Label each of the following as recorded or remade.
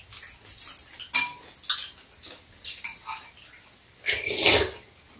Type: recorded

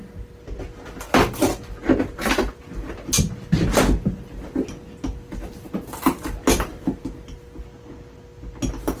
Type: recorded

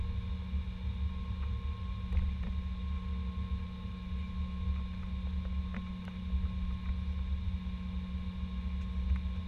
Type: recorded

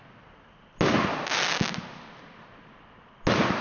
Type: recorded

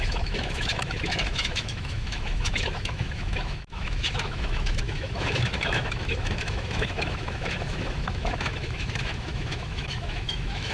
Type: remade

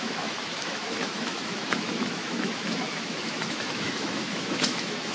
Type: remade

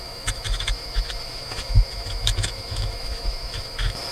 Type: remade